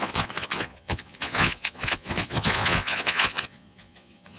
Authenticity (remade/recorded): remade